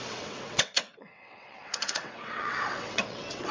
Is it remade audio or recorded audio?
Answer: remade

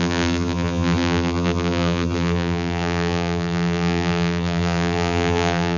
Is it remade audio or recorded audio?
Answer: remade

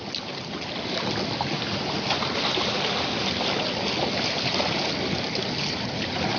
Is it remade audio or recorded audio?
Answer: recorded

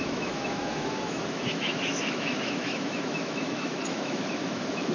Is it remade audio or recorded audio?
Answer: remade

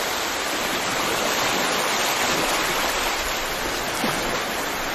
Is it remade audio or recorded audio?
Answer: recorded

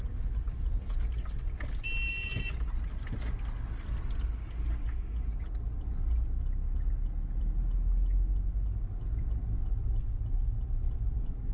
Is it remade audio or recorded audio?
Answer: recorded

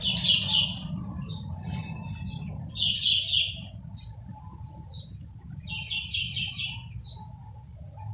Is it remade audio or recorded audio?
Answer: recorded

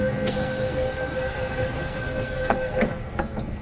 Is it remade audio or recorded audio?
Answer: remade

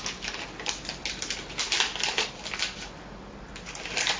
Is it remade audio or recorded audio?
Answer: recorded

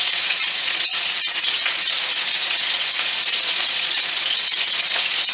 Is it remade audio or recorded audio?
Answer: remade